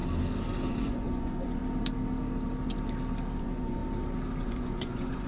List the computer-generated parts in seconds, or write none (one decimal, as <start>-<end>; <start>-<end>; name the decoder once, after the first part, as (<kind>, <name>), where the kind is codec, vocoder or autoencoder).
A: 0.7-1.6 (vocoder, Vocos); 3.4-3.8; 4.4-5.3